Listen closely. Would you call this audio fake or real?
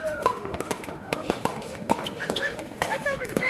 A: fake